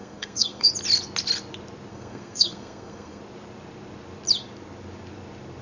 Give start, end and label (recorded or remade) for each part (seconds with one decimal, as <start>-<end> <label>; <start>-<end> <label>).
0.0-0.7 remade; 0.7-1.9 recorded; 1.9-3.2 remade; 3.2-5.6 recorded